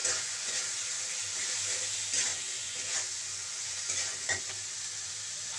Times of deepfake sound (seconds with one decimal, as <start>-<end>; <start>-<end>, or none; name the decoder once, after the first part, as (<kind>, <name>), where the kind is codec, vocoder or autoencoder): 0.0-0.6 (vocoder, Vocos); 2.3-4.4